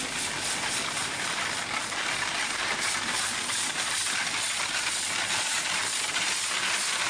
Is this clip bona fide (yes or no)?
yes